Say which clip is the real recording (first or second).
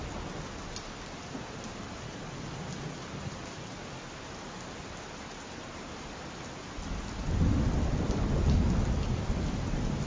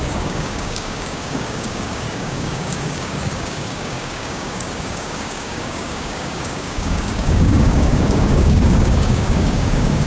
first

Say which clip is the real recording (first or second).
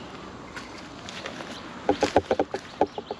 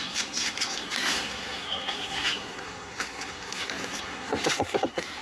first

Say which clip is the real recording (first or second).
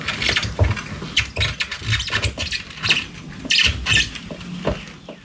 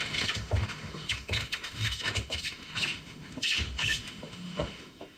first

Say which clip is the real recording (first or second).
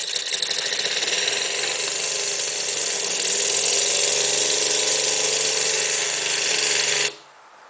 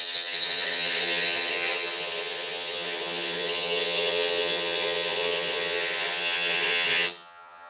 first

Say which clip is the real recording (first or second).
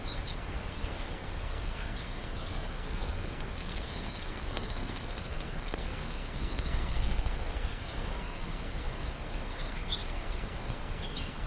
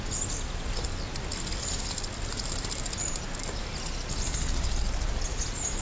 second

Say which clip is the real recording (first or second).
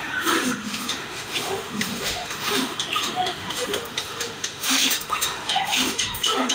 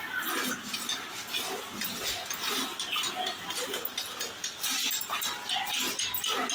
second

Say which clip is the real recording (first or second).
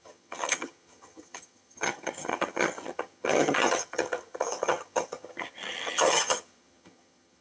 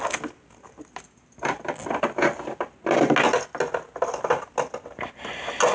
second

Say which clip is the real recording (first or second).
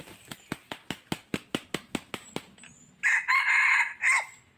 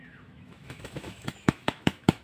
first